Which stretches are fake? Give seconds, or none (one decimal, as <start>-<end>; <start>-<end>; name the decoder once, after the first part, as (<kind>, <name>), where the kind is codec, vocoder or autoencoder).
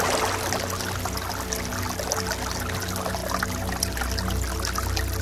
none